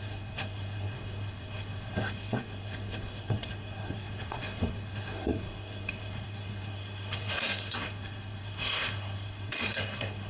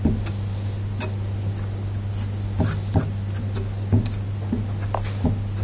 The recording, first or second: second